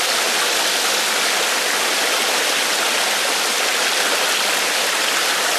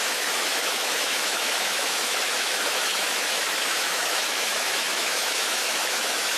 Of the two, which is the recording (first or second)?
first